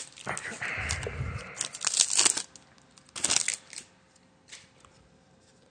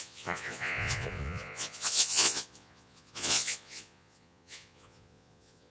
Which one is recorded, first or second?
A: first